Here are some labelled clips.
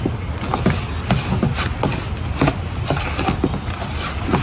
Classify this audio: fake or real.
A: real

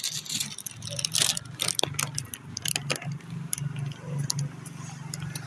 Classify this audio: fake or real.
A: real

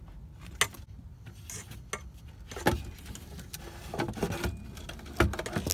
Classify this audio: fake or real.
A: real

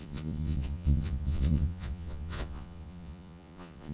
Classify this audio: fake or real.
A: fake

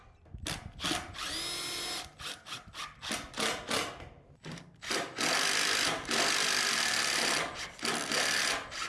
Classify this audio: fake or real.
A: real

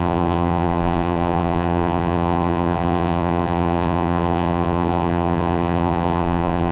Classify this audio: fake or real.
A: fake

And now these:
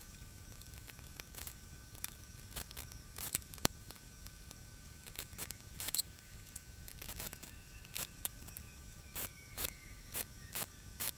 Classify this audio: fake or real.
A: fake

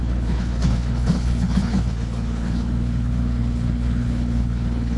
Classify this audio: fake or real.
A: fake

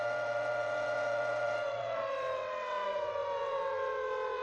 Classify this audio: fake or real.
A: fake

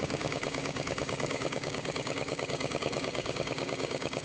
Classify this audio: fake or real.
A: fake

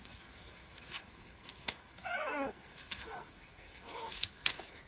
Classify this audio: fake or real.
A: fake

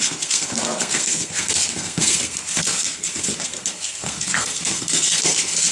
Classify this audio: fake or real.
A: fake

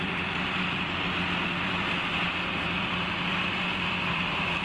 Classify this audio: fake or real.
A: fake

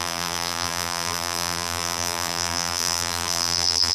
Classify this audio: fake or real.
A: fake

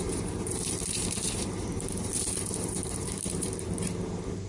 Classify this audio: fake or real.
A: fake